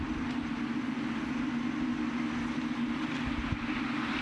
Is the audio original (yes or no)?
yes